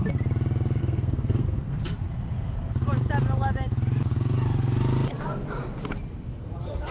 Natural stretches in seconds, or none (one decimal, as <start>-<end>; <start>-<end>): 0.0-0.8; 1.8-6.9